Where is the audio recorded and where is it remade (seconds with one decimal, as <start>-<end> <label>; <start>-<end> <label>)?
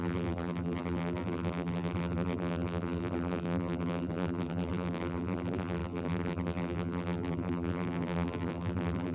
0.0-9.1 remade